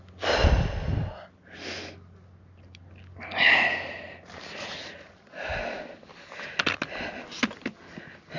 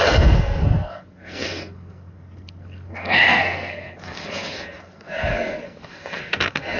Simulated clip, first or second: second